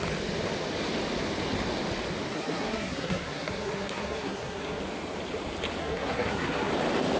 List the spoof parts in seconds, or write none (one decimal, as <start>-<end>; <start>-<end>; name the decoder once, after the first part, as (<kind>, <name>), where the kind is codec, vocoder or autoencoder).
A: 2.3-4.8 (codec, SNAC); 5.8-6.7